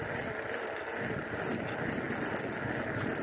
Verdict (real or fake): real